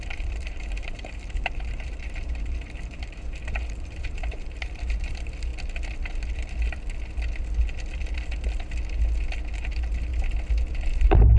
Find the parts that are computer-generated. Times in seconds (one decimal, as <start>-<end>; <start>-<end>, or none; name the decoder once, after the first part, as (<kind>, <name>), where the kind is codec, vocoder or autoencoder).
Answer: 0.0-5.5 (vocoder, BigVGAN v2); 9.5-10.1